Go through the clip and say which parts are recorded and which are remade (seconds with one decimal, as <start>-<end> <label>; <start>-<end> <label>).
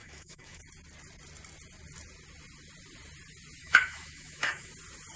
0.0-0.6 remade; 0.6-3.6 recorded; 3.6-4.7 remade; 4.7-5.2 recorded